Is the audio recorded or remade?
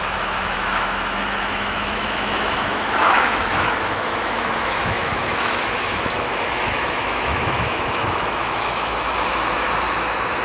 remade